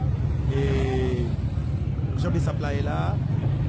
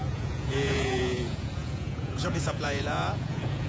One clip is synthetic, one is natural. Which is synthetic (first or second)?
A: second